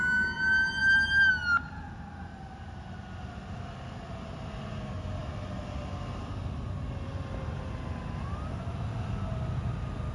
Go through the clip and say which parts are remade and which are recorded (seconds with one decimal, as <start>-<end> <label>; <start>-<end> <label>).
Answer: 0.0-10.1 recorded